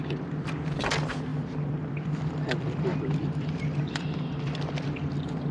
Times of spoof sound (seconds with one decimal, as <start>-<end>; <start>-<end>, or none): 1.3-4.6